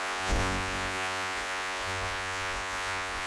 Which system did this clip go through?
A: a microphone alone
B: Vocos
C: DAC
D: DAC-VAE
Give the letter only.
B